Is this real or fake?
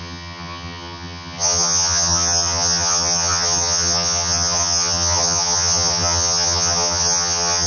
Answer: fake